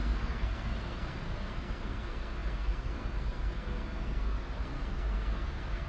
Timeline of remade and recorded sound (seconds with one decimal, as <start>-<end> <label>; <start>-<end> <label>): 0.0-5.9 remade